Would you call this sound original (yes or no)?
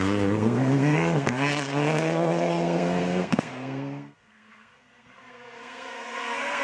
no